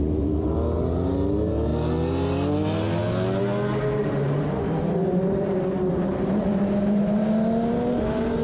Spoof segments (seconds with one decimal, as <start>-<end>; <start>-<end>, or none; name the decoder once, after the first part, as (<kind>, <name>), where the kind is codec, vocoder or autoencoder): 4.0-5.6 (vocoder, BigVGAN v2)